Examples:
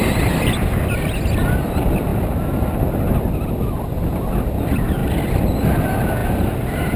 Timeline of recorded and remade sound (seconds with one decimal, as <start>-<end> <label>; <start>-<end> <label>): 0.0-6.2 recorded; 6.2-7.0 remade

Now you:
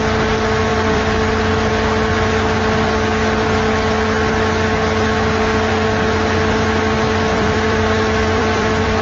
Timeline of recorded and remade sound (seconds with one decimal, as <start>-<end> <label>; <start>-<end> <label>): 0.0-0.7 recorded; 0.7-1.2 remade; 1.2-7.3 recorded; 7.3-9.0 remade

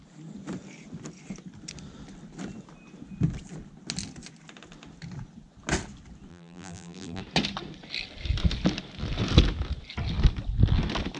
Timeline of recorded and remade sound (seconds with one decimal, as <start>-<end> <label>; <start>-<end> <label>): 0.0-6.3 recorded; 6.3-7.2 remade; 7.2-11.2 recorded

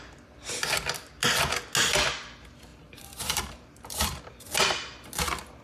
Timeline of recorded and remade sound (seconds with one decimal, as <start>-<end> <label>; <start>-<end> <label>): 0.0-2.7 recorded; 2.7-4.2 remade; 4.2-5.6 recorded

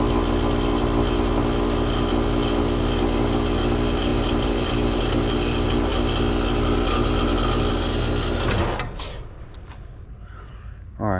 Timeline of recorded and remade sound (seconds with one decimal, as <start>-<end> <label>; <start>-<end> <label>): 0.0-4.1 recorded; 4.1-5.0 remade; 5.0-11.2 recorded

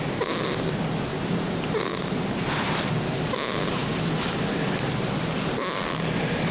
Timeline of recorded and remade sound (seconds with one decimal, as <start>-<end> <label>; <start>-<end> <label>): 0.0-1.1 recorded; 1.1-2.9 remade; 2.9-6.5 recorded

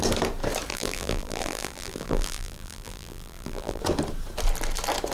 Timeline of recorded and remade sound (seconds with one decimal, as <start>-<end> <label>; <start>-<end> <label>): 0.0-0.7 recorded; 0.7-3.8 remade; 3.8-5.1 recorded